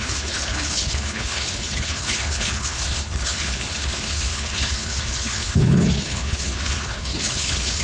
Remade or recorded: remade